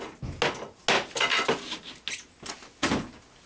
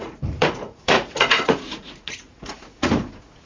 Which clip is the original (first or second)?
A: first